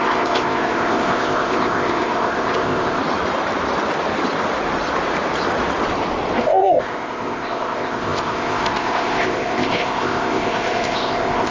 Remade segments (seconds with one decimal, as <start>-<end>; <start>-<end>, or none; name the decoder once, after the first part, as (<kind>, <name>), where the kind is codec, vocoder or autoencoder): 0.0-3.0 (codec, ZipCodec); 6.4-11.5